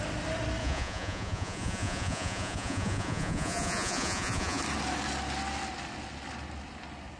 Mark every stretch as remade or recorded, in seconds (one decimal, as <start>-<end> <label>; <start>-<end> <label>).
0.0-0.6 recorded; 0.6-4.6 remade; 4.6-7.2 recorded